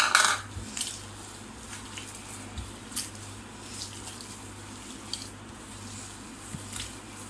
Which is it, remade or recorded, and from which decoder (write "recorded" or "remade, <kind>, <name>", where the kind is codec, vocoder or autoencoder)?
recorded